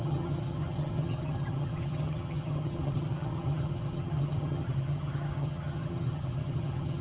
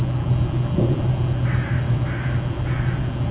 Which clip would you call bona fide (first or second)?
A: second